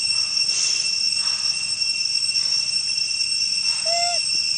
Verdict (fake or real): real